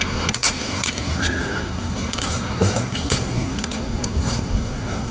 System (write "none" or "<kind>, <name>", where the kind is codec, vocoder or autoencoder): codec, SNAC